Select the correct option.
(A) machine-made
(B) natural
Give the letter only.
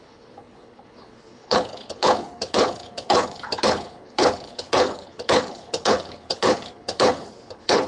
A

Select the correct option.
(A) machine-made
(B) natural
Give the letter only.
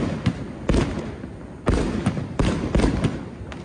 B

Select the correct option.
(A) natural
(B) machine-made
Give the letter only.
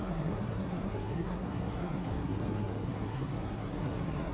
B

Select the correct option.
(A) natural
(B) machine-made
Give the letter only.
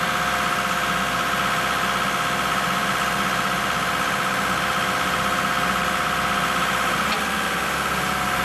A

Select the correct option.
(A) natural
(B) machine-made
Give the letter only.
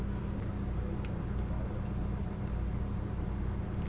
A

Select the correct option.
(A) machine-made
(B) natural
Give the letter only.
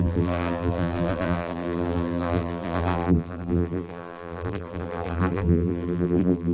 A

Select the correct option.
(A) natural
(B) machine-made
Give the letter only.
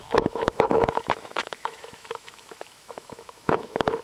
B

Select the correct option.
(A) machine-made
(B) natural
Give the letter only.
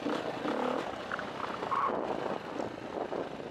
B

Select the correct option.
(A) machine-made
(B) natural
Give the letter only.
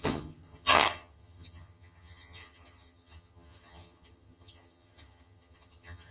A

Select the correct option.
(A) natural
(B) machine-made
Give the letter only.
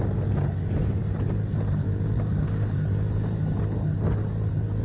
A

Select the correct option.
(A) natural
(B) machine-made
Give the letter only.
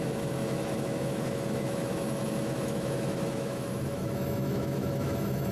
B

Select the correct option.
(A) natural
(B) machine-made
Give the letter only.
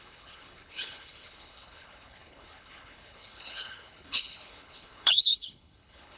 B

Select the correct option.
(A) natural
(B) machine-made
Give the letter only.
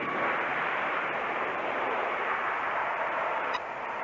B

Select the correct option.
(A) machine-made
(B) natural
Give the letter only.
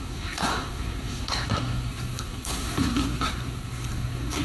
A